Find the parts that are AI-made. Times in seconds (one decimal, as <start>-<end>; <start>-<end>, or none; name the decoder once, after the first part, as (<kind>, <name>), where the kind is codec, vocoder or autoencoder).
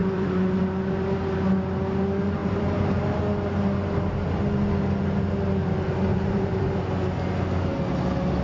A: 0.0-0.6 (vocoder, BigVGAN v2); 2.4-3.2; 6.1-6.6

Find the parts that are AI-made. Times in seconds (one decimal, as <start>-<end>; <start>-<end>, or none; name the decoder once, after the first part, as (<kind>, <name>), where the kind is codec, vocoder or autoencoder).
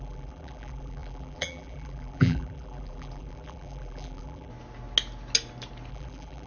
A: 0.0-4.5 (vocoder, BigVGAN v2); 5.9-6.5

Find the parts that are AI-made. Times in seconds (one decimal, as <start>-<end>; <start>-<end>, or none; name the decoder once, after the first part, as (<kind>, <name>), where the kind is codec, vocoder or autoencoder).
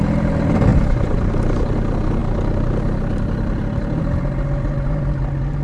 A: 0.7-1.3 (vocoder, BigVGAN v2)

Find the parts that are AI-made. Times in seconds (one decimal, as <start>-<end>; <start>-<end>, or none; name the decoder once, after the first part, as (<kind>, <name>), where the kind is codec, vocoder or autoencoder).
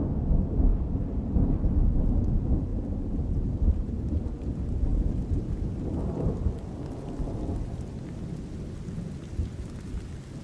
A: 0.7-2.0 (vocoder, BigVGAN v2); 2.7-4.2; 4.9-5.7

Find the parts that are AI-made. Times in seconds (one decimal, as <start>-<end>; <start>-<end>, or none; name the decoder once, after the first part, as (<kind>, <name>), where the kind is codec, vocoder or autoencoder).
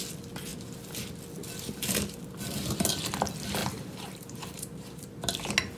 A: 3.6-5.1 (vocoder, BigVGAN v2)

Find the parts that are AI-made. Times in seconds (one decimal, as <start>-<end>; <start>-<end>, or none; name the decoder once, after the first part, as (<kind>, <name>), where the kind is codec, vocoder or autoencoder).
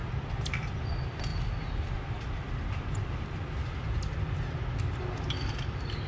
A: none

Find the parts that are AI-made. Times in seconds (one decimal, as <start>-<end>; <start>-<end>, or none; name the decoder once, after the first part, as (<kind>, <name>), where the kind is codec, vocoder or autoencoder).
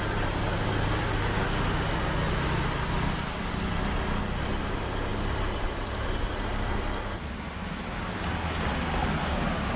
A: none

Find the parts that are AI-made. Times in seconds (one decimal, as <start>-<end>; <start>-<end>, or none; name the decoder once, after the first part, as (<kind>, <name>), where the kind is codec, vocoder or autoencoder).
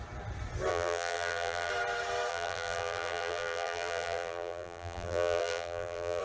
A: 0.7-1.7 (vocoder, BigVGAN v2); 2.3-6.2